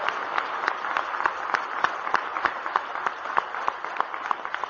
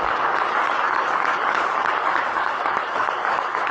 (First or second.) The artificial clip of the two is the second